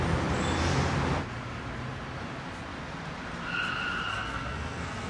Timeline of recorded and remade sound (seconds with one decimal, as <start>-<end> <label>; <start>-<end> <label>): 0.0-4.1 recorded; 4.1-5.1 remade